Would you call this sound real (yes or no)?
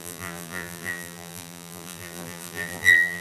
no